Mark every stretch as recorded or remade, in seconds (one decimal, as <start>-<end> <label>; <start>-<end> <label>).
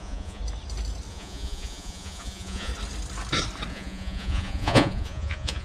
0.0-0.4 remade; 0.4-1.1 recorded; 1.1-2.7 remade; 2.7-3.7 recorded; 3.7-5.6 remade